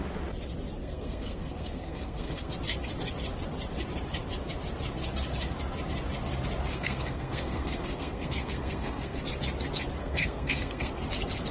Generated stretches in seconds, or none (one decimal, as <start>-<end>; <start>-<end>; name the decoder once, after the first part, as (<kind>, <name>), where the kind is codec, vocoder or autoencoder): 0.8-2.5 (codec, SNAC); 6.7-9.2; 10.0-10.9

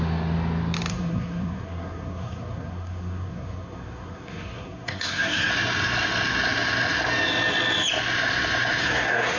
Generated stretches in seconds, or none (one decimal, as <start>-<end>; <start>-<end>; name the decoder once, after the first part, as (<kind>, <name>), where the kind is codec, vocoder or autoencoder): 0.9-5.5 (codec, SNAC); 8.8-9.4

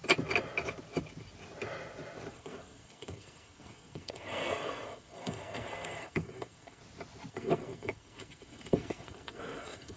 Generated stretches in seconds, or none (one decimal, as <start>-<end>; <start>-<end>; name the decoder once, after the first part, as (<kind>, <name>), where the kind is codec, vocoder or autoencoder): 2.3-6.8 (codec, SNAC); 7.3-10.0

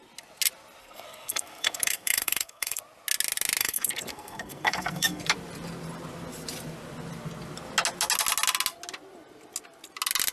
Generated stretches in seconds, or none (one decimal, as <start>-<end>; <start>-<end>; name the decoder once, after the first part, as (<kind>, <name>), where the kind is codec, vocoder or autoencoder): 0.8-2.8 (codec, SNAC); 3.6-5.3

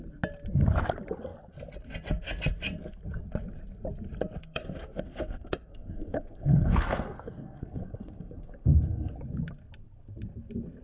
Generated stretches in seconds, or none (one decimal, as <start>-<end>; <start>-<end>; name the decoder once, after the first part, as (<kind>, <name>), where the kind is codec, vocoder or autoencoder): 4.4-9.1 (codec, SNAC)

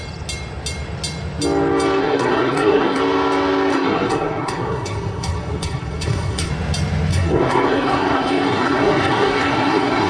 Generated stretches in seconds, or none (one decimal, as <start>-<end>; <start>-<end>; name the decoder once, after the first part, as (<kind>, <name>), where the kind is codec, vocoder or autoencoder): 2.0-3.0 (codec, SNAC); 3.7-6.5; 7.1-10.1

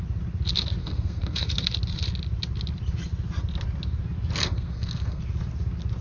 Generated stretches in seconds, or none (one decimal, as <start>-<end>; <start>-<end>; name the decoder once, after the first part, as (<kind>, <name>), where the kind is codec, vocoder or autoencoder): 0.8-1.5 (codec, SNAC); 4.4-5.2

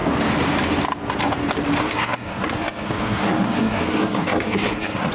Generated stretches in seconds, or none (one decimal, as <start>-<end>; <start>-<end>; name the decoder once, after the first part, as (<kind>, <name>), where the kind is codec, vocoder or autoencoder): 1.8-5.1 (codec, SNAC)